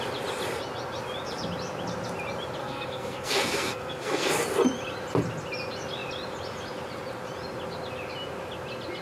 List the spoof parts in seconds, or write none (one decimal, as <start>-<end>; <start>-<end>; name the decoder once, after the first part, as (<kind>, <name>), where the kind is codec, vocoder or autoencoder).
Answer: 2.6-4.3 (codec, SNAC)